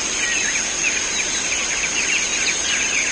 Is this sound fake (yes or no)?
no